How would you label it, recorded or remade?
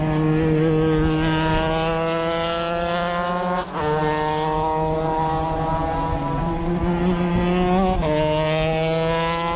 recorded